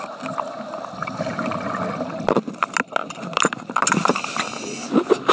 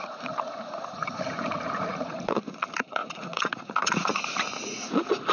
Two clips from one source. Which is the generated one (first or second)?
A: second